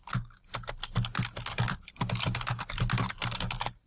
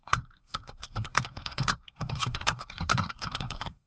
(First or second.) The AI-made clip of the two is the second